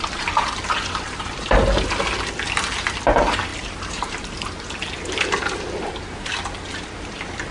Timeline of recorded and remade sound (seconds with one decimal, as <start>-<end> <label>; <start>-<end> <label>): 0.0-3.5 recorded; 3.5-4.3 remade; 4.3-7.5 recorded